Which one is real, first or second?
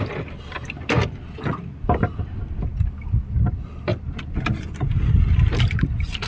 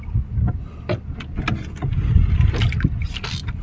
second